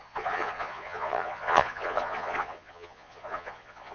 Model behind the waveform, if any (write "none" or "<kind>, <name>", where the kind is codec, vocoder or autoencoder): vocoder, Vocos